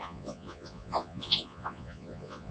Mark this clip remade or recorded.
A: remade